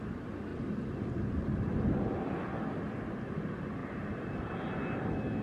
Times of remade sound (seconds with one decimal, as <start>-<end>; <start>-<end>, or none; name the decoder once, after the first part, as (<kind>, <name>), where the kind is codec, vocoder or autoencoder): 0.5-2.3 (vocoder, BigVGAN v2); 3.8-4.5